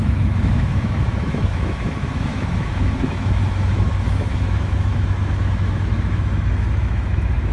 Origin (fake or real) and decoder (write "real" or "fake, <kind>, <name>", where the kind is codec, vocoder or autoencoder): fake, autoencoder, DAC-VAE